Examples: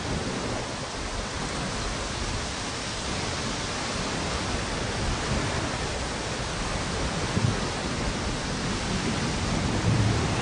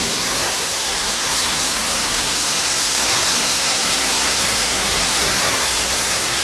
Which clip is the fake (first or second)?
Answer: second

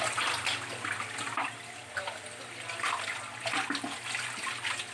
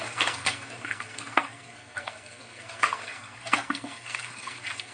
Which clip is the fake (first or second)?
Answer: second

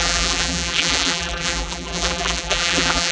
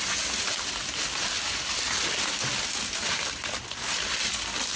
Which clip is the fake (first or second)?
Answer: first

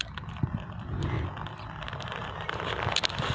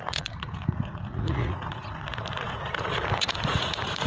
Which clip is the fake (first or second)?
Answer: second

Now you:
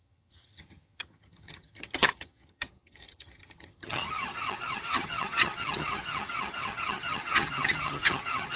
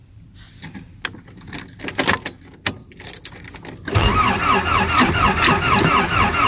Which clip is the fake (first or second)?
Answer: first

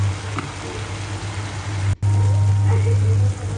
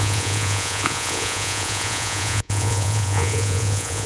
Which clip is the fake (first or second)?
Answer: second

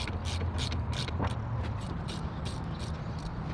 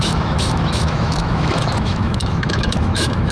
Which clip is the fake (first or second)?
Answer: second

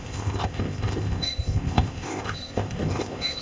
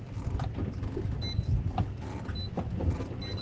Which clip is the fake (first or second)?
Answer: first